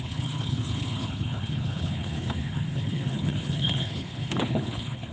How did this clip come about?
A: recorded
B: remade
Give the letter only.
B